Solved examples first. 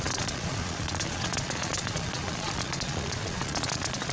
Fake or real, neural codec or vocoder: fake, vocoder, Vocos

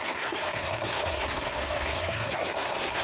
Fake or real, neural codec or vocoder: fake, codec, SNAC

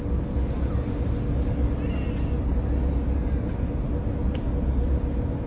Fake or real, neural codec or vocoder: real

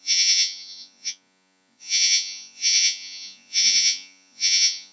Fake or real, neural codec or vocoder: fake, vocoder, Vocos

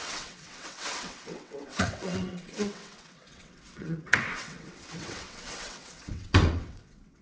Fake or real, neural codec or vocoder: fake, vocoder, WaveNeXt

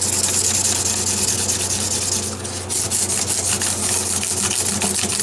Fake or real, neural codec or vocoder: real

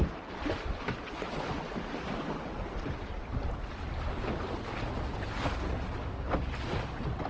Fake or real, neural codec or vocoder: real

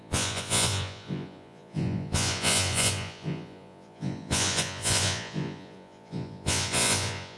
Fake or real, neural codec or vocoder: fake, vocoder, Vocos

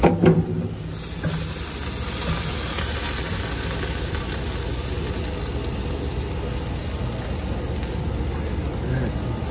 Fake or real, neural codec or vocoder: real